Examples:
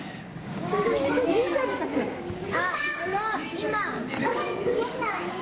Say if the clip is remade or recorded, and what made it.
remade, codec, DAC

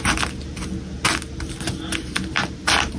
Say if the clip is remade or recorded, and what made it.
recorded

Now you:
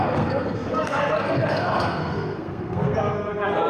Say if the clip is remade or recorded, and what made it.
remade, codec, SNAC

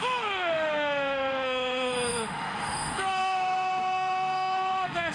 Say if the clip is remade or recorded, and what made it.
remade, autoencoder, DAC-VAE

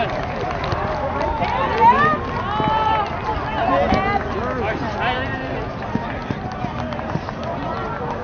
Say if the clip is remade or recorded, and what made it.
recorded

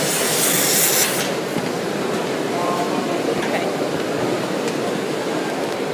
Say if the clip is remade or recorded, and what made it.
recorded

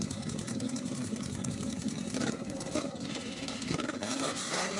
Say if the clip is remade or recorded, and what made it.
remade, codec, SNAC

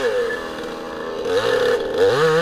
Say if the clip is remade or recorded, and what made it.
recorded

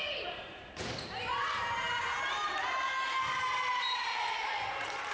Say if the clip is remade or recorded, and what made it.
remade, vocoder, BigVGAN v2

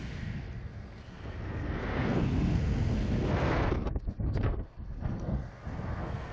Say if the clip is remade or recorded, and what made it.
remade, codec, SNAC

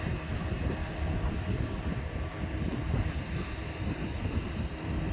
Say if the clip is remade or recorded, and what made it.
recorded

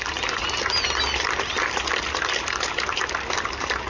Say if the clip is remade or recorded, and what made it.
recorded